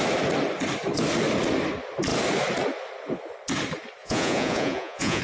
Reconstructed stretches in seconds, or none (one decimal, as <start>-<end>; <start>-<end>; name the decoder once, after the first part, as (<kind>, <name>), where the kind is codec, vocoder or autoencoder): 4.0-5.2 (vocoder, Vocos)